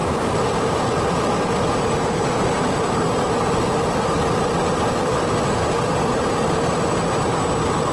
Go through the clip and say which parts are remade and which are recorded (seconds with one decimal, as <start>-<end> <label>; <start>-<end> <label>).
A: 0.0-7.9 recorded